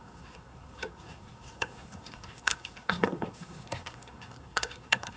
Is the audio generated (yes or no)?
yes